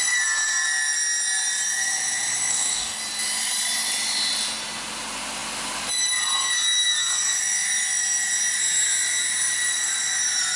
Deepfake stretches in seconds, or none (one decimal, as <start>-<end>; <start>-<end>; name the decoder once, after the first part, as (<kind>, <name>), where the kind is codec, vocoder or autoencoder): 2.5-3.0 (codec, DAC)